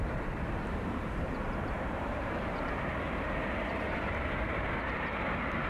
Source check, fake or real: fake